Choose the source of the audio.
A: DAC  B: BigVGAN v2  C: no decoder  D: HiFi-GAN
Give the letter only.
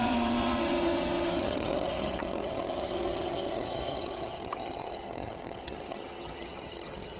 D